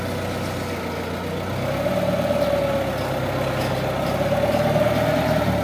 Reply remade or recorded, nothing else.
recorded